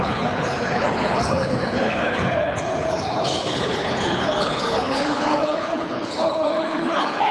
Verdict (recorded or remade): remade